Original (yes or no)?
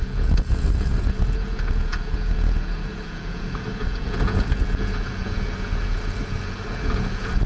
no